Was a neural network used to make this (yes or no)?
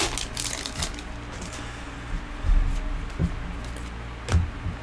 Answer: no